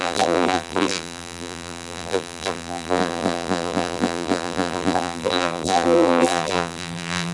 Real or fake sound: fake